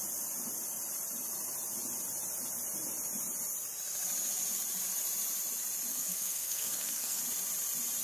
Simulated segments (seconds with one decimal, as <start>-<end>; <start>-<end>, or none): 5.9-7.2